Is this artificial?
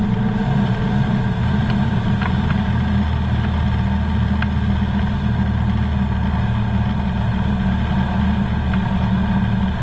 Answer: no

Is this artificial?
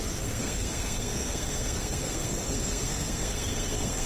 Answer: yes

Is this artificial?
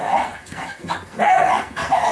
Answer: yes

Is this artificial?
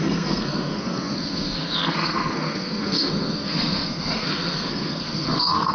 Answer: yes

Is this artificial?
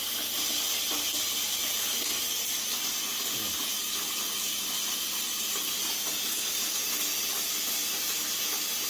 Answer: no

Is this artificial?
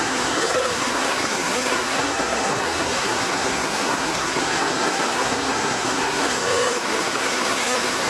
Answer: yes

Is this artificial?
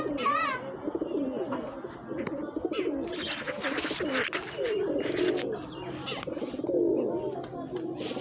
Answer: no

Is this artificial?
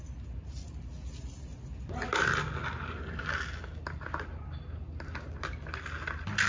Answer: no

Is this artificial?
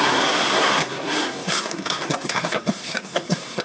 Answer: yes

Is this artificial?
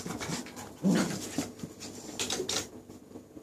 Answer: no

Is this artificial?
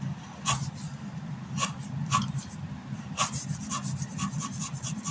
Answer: no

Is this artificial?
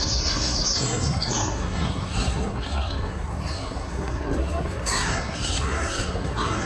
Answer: yes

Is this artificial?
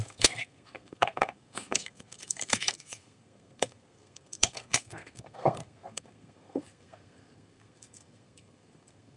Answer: yes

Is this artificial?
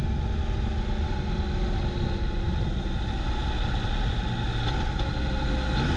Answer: no